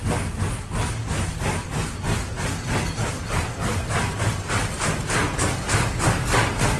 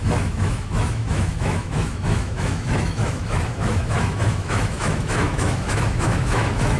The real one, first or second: first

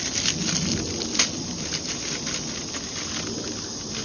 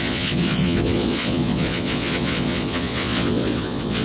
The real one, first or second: first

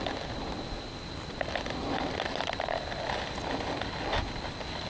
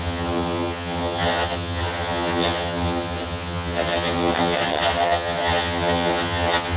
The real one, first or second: first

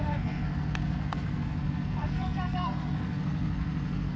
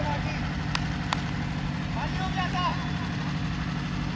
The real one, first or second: second